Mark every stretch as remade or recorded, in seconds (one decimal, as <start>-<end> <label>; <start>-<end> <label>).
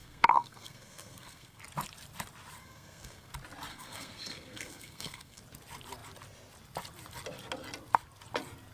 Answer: 0.0-1.6 remade; 1.6-2.6 recorded; 2.6-3.3 remade; 3.3-3.7 recorded; 3.7-5.4 remade; 5.4-8.7 recorded